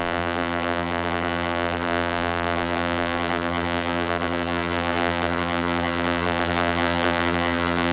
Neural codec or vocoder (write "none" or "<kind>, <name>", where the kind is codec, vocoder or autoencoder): vocoder, BigVGAN v2